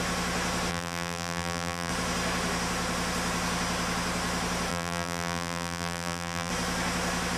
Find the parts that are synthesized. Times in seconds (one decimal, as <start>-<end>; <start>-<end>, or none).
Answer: 0.7-1.9; 4.7-6.5